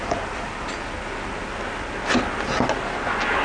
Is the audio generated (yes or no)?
no